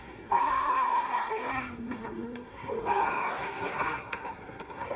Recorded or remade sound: remade